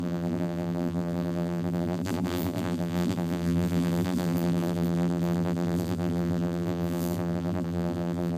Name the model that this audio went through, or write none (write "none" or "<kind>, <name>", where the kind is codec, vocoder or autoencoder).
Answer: vocoder, BigVGAN v2